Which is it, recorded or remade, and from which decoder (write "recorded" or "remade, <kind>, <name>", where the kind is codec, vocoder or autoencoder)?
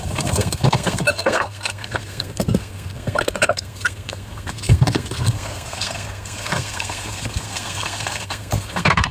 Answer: remade, codec, SNAC